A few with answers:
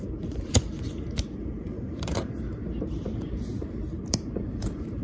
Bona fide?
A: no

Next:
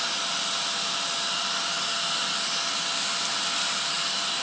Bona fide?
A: yes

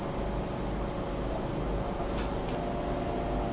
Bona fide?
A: yes